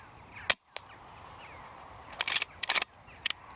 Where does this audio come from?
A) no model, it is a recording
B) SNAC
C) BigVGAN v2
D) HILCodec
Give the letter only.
A